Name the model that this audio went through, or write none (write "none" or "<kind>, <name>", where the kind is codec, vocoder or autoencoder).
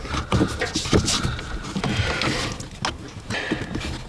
none